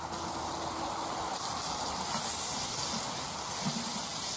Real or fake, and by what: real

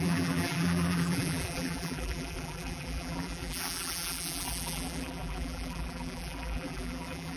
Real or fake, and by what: fake, vocoder, BigVGAN v2